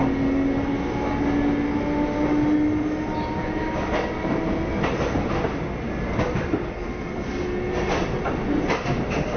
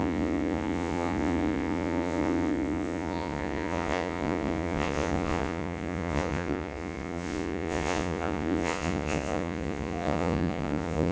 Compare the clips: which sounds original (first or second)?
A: first